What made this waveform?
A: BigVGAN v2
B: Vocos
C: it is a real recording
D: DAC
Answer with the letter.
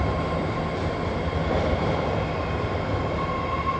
C